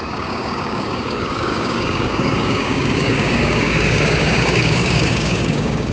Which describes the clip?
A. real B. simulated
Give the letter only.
B